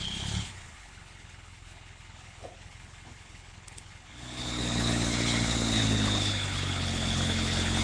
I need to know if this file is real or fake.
fake